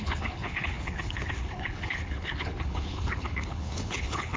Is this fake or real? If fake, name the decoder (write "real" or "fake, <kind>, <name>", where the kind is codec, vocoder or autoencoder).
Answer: fake, codec, HILCodec